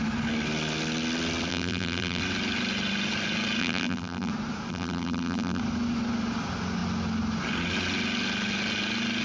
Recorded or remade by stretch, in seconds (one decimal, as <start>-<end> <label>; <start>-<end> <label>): 0.0-1.5 recorded; 1.5-2.2 remade; 2.2-3.6 recorded; 3.6-4.3 remade; 4.3-4.7 recorded; 4.7-5.6 remade; 5.6-9.2 recorded